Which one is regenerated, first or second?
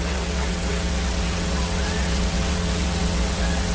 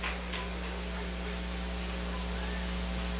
first